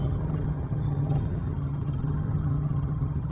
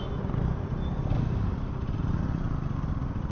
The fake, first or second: first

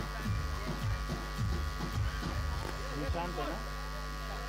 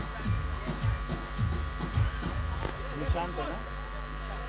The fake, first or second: second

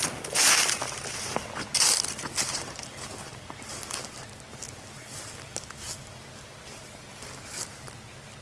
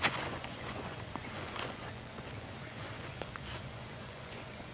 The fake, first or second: second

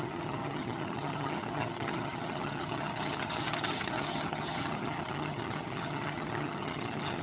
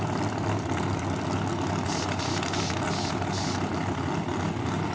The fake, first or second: first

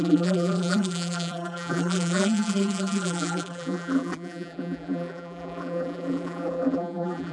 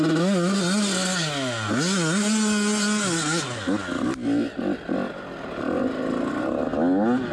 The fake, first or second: first